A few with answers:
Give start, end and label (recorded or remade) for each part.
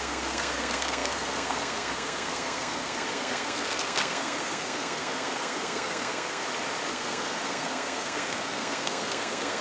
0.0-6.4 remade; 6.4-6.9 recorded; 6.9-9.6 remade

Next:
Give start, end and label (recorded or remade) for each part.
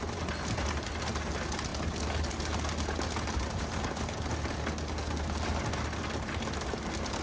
0.0-7.2 recorded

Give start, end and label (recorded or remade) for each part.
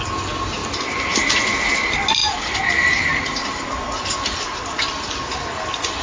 0.0-0.6 recorded; 0.6-1.6 remade; 1.6-2.2 recorded; 2.2-5.0 remade; 5.0-6.0 recorded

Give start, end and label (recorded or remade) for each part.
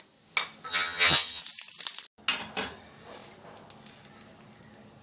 0.0-0.7 recorded; 0.7-1.4 remade; 1.4-5.0 recorded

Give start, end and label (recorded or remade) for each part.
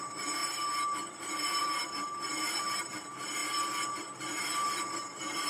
0.0-3.4 remade; 3.4-4.2 recorded; 4.2-5.5 remade